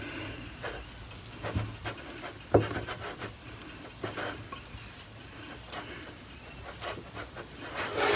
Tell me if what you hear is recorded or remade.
recorded